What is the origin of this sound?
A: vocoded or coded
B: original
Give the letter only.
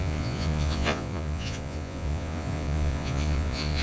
A